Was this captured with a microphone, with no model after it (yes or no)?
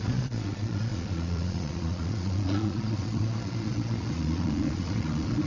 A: no